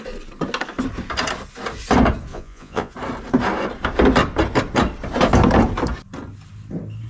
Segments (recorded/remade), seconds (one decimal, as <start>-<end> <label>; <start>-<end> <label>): 0.0-2.3 recorded; 2.3-2.9 remade; 2.9-7.1 recorded